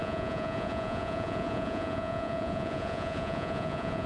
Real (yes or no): no